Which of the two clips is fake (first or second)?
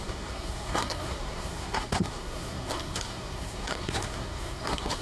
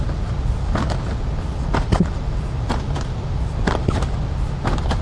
first